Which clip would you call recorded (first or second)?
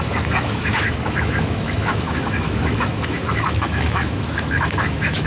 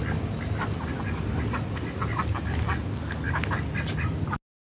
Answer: second